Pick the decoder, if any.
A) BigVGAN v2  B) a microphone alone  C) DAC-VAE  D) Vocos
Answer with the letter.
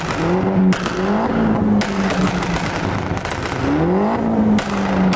B